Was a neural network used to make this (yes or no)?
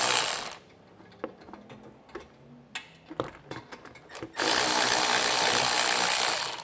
no